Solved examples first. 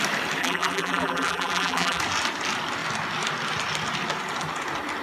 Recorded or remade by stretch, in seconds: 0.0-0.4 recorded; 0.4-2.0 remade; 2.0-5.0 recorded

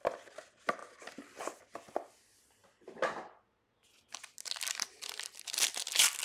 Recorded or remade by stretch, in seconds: 0.0-6.2 recorded

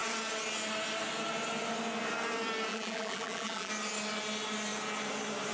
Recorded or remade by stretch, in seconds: 0.0-2.7 recorded; 2.7-3.7 remade; 3.7-5.5 recorded

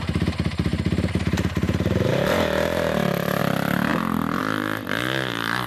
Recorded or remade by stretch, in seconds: 0.0-0.7 recorded; 0.7-3.4 remade; 3.4-5.7 recorded

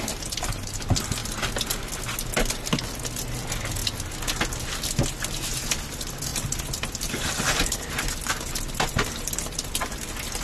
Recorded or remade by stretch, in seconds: 0.0-1.2 remade; 1.2-3.0 recorded; 3.0-3.8 remade; 3.8-5.8 recorded; 5.8-10.4 remade